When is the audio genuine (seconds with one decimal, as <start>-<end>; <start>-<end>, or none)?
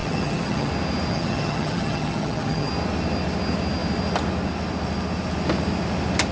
0.7-1.1; 2.7-6.3